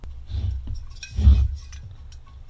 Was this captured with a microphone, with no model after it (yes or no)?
yes